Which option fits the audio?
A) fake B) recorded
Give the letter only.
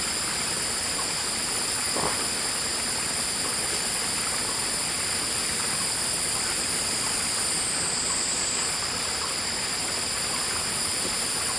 B